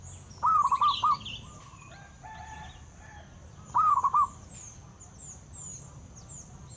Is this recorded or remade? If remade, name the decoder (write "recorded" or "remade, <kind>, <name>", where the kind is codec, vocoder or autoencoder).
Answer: recorded